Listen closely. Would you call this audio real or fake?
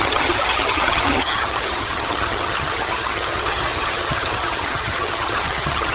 fake